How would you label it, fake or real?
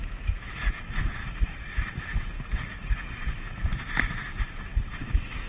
fake